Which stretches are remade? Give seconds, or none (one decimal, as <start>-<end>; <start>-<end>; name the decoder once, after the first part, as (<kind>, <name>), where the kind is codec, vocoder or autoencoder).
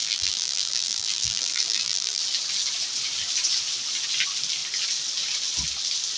0.0-2.2 (vocoder, BigVGAN v2)